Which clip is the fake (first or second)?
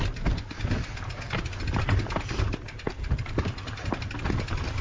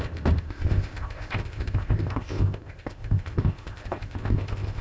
second